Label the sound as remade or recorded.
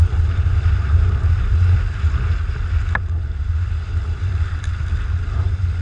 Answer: recorded